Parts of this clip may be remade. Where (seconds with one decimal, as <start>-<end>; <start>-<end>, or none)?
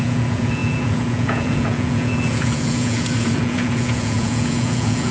0.0-5.1